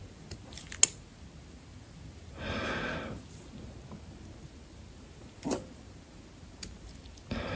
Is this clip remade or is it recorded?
recorded